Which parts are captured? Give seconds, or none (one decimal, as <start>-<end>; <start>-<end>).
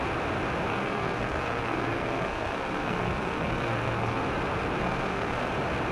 0.0-0.7; 4.2-4.8; 5.5-5.9